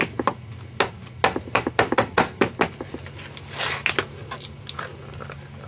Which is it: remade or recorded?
recorded